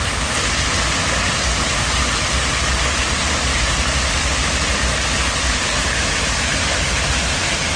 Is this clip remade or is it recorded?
recorded